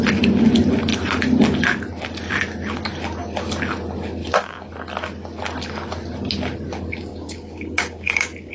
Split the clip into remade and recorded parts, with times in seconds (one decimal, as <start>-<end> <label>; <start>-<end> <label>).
0.0-4.2 recorded; 4.2-4.7 remade; 4.7-7.1 recorded; 7.1-8.5 remade